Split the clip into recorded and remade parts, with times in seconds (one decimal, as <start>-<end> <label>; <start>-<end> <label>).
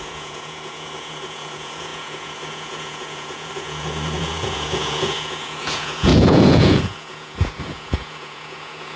0.0-9.0 remade